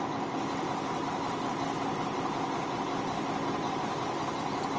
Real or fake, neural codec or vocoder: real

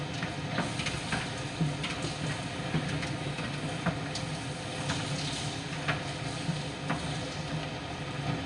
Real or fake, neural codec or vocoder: real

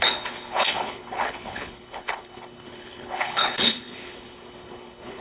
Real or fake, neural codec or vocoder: fake, codec, HILCodec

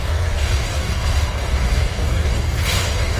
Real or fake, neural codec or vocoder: fake, codec, DAC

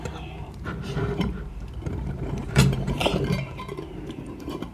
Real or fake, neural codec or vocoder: fake, vocoder, BigVGAN v2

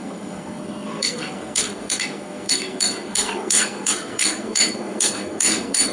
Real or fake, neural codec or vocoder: fake, codec, SNAC